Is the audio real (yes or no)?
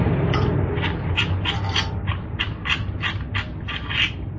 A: yes